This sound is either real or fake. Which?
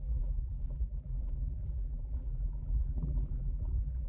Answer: fake